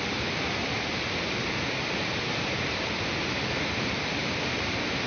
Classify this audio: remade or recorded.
remade